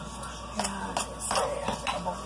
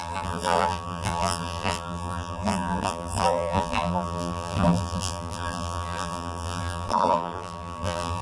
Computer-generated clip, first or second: second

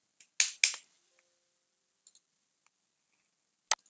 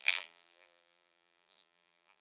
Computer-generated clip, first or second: second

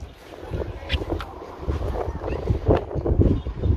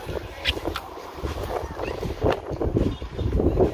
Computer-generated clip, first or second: second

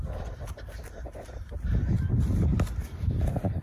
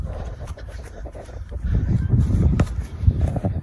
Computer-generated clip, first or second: second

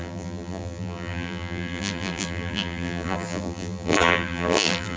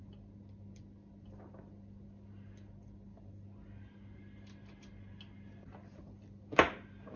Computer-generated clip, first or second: first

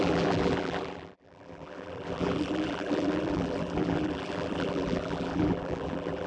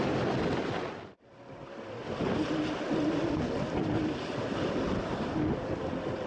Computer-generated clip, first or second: first